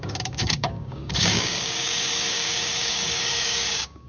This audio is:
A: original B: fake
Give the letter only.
B